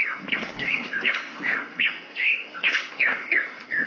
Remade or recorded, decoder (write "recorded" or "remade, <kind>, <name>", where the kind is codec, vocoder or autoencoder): remade, codec, SNAC